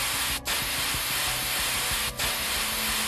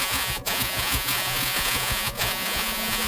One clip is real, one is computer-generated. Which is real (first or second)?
first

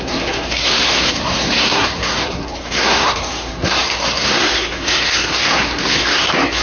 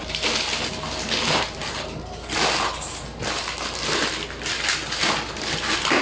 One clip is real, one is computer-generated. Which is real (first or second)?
second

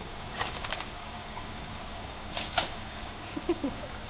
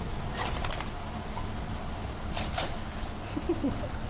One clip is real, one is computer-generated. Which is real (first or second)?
second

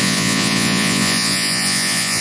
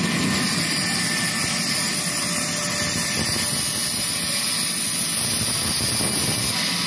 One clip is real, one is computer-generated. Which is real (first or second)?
second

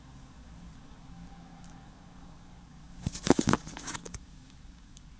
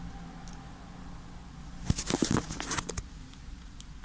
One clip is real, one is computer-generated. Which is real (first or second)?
second